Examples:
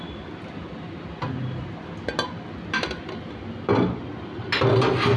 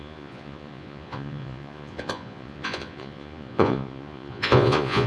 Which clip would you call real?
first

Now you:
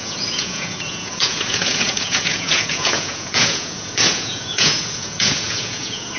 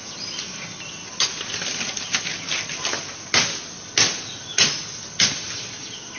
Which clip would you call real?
second